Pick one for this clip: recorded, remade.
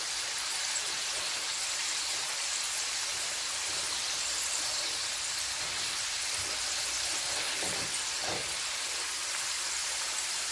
recorded